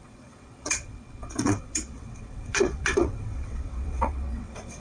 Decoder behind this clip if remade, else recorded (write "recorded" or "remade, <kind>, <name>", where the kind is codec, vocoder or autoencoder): remade, vocoder, WaveNeXt